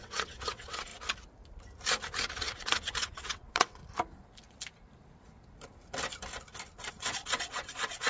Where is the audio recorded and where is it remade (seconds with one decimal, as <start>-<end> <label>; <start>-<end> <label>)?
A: 0.0-0.9 remade; 0.9-2.4 recorded; 2.4-3.8 remade; 3.8-6.9 recorded; 6.9-8.1 remade